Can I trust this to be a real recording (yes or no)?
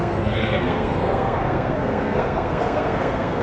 no